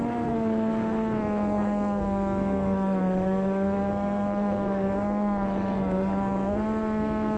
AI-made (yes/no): yes